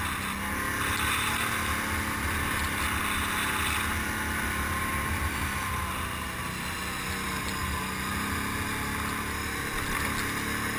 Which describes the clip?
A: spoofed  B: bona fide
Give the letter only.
B